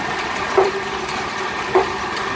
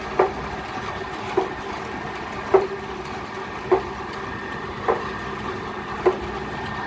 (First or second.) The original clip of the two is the second